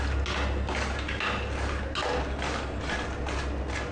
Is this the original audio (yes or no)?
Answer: yes